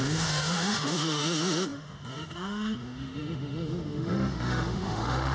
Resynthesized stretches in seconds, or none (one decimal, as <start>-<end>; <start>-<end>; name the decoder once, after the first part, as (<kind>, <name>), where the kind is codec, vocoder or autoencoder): 0.0-5.3 (autoencoder, DAC-VAE)